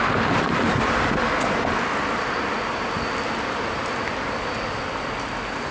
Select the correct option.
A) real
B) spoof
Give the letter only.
A